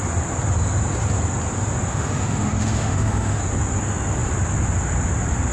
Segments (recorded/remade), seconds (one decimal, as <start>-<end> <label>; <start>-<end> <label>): 0.0-1.9 recorded; 1.9-3.4 remade; 3.4-5.5 recorded